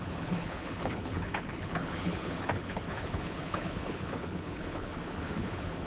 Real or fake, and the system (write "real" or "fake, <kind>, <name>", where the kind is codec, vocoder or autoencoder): fake, codec, HILCodec